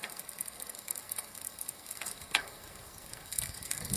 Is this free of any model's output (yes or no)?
no